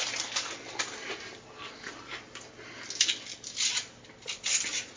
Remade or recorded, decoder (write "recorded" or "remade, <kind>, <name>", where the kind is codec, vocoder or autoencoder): recorded